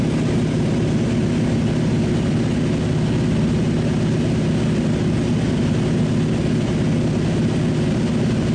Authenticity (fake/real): real